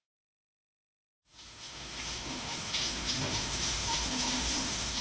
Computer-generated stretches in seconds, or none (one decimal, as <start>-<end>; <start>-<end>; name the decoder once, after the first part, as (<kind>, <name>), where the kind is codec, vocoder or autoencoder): 0.0-5.0 (autoencoder, DAC-VAE)